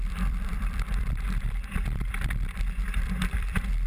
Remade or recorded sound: remade